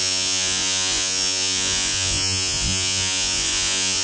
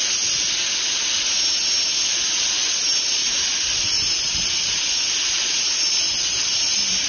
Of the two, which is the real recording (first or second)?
second